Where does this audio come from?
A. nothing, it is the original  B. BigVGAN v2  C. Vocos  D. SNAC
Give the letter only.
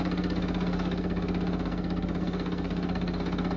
D